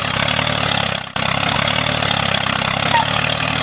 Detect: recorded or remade recorded